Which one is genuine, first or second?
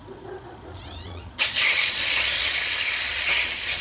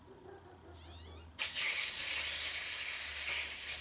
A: second